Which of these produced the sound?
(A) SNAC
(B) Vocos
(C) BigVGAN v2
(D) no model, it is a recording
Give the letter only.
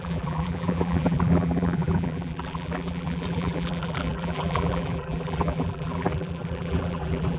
C